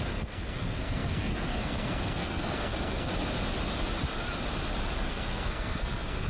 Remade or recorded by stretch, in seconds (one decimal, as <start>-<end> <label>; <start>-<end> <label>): 0.0-3.1 remade; 3.1-5.1 recorded; 5.1-6.3 remade